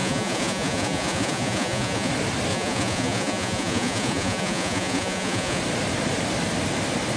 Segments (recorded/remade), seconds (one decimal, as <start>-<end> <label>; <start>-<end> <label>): 0.0-2.1 remade; 2.1-2.5 recorded; 2.5-5.6 remade; 5.6-7.2 recorded